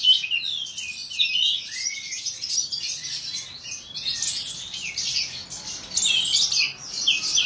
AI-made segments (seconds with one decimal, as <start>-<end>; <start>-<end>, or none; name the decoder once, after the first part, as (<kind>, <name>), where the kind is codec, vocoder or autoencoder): none